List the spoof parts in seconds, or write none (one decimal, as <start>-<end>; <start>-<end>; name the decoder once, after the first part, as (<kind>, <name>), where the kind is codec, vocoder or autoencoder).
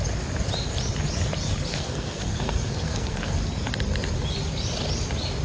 1.7-3.4 (codec, SNAC)